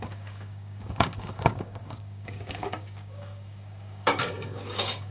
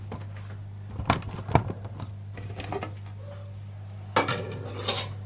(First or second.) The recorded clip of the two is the second